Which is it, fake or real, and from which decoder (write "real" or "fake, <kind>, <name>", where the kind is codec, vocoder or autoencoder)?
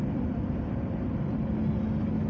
real